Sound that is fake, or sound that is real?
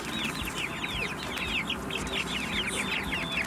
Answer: real